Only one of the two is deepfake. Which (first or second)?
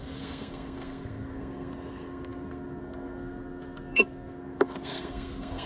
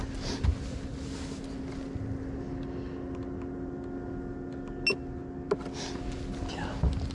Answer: first